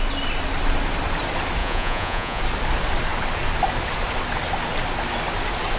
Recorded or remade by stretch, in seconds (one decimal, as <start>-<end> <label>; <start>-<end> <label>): 0.0-1.6 recorded; 1.6-2.4 remade; 2.4-5.8 recorded